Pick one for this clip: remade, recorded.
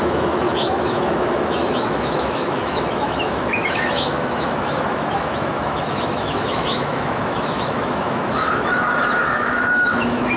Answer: remade